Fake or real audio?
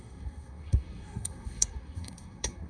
fake